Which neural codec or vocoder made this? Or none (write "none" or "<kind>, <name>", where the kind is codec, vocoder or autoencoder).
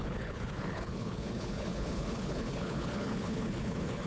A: codec, HILCodec